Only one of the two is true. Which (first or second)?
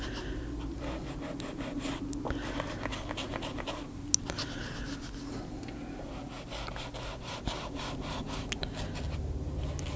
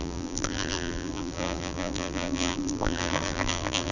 first